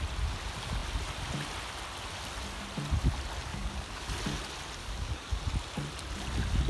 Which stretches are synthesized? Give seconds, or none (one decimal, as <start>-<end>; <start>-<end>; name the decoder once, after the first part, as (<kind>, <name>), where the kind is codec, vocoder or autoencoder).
3.5-4.1 (codec, DAC); 4.8-5.4